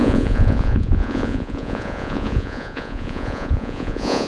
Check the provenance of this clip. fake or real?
fake